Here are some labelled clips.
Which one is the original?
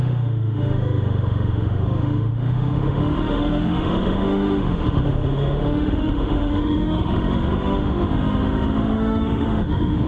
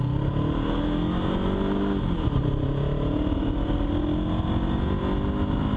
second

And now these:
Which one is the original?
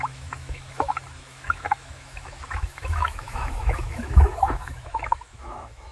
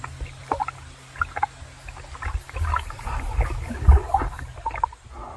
second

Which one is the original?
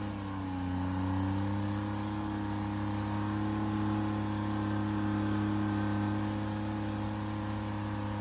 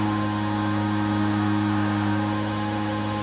first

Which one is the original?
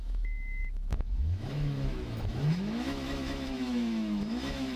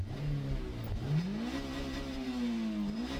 second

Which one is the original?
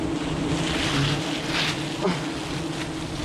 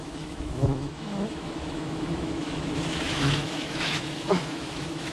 first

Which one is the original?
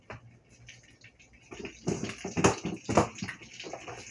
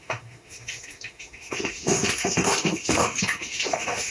first